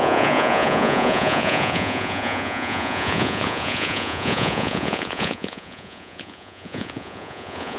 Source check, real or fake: fake